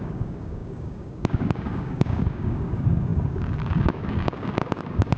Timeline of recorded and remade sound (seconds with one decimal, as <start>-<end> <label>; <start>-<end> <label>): 0.0-5.2 remade